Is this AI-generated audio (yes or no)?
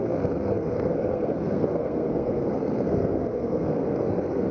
yes